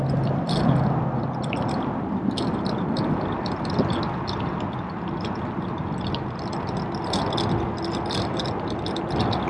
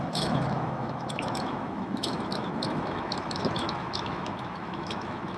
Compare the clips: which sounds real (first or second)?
first